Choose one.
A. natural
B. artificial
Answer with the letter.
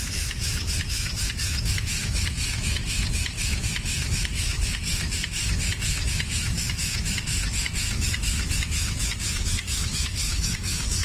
B